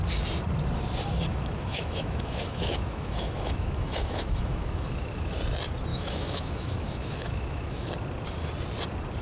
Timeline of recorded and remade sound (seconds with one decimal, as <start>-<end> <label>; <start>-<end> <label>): 0.0-1.3 recorded; 1.3-5.3 remade; 5.3-5.9 recorded; 5.9-7.9 remade; 7.9-9.2 recorded